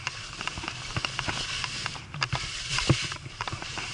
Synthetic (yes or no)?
yes